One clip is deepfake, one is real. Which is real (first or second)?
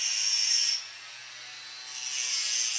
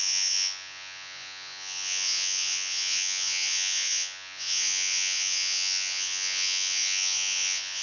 first